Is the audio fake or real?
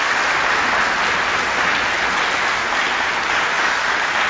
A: real